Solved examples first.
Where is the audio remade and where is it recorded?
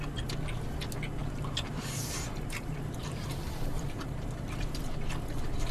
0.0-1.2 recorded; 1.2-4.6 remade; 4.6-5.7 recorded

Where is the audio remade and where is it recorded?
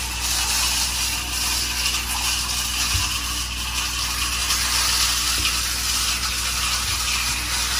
0.0-7.8 recorded